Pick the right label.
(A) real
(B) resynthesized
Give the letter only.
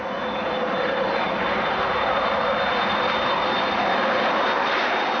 A